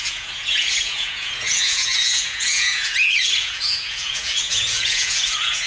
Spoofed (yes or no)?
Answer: yes